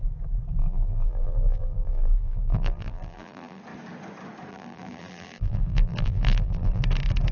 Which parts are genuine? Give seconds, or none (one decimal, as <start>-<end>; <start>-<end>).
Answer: 0.0-0.6; 3.6-4.5; 6.8-7.3